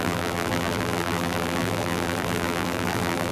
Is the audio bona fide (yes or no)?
no